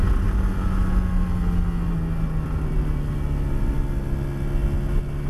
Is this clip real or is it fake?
real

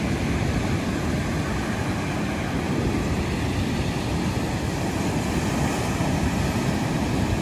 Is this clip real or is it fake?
real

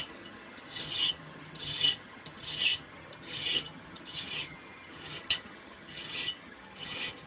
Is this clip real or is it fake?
fake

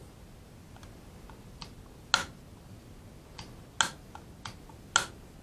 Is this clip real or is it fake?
real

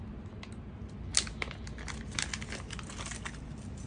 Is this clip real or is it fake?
real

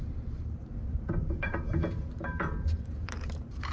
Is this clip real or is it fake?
fake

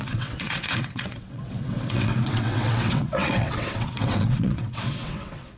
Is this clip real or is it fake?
fake